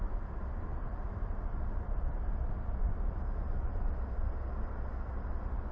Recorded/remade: recorded